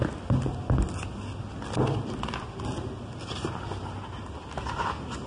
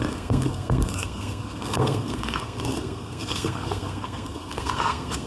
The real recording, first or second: first